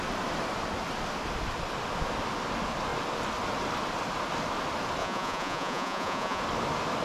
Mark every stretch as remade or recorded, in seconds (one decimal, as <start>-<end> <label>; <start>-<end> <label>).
0.0-5.0 recorded; 5.0-6.4 remade; 6.4-7.0 recorded